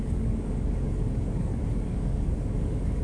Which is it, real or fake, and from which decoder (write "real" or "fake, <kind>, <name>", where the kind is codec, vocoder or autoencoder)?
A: fake, codec, DAC